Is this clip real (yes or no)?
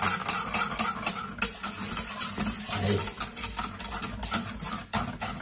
yes